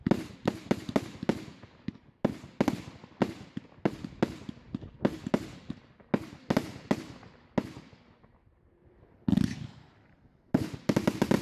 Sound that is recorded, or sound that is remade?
recorded